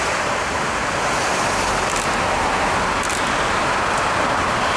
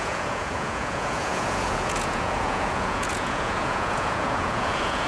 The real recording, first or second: first